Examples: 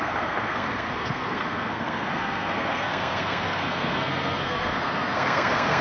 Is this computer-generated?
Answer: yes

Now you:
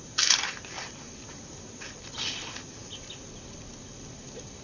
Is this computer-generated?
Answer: no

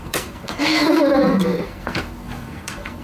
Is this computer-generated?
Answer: yes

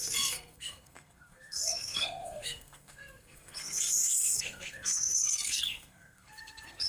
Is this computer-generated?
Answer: yes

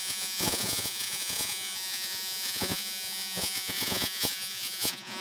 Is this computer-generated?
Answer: yes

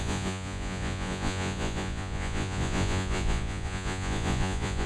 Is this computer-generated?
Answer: yes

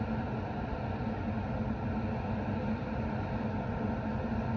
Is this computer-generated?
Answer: no